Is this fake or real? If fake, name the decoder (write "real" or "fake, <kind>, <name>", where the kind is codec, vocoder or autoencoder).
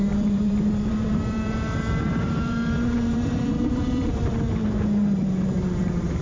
fake, vocoder, BigVGAN v2